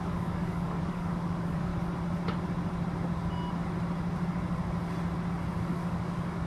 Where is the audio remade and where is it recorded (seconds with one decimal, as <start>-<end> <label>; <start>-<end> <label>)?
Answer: 0.0-1.7 remade; 1.7-5.6 recorded; 5.6-6.5 remade